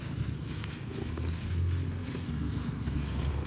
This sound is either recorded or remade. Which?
remade